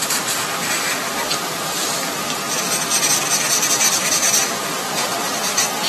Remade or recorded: recorded